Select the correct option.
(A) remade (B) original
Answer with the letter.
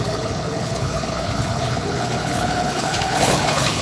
A